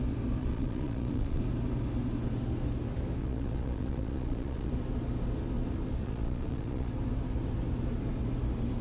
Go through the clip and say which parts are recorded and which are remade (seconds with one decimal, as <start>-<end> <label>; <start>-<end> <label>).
0.0-0.4 recorded; 0.4-1.4 remade; 1.4-3.2 recorded; 3.2-4.7 remade; 4.7-6.0 recorded; 6.0-6.9 remade; 6.9-8.8 recorded